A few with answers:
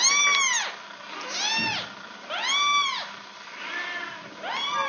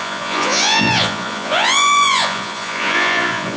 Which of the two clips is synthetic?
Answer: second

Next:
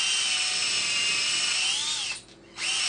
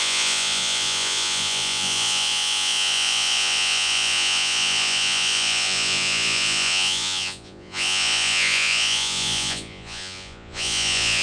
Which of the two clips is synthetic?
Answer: second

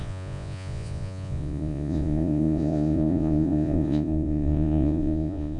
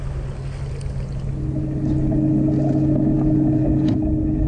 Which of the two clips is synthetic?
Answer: first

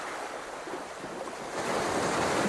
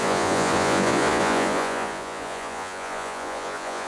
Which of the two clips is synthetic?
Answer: second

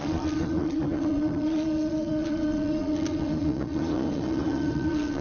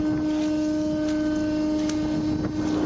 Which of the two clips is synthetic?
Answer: first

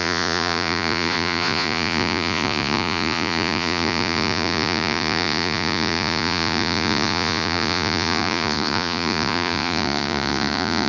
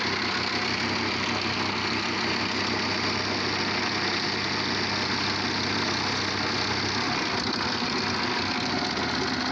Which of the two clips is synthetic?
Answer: first